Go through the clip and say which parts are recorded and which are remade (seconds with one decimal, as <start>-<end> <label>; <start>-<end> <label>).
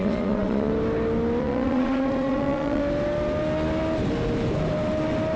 0.0-0.7 remade; 0.7-1.4 recorded; 1.4-2.8 remade; 2.8-5.4 recorded